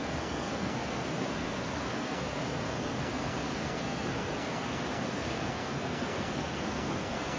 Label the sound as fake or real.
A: fake